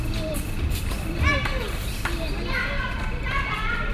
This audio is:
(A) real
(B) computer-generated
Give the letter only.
A